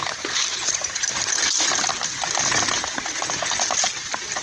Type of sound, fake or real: real